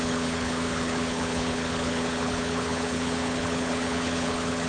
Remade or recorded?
remade